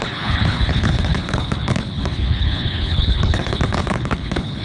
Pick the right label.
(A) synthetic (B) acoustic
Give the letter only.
A